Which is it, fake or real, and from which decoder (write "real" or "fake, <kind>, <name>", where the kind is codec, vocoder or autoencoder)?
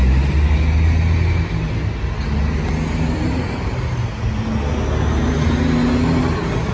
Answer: real